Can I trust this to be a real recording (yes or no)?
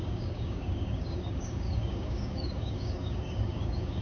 no